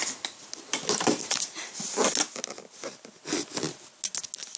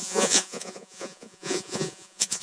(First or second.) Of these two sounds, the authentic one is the first